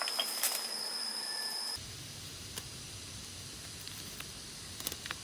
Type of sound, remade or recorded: recorded